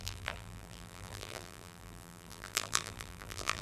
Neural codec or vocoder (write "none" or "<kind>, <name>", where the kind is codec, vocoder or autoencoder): vocoder, BigVGAN v2